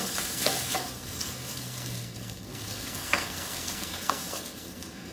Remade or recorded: remade